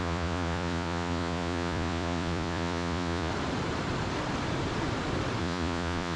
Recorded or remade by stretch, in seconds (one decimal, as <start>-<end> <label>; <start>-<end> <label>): 0.0-3.3 remade; 3.3-5.4 recorded; 5.4-6.2 remade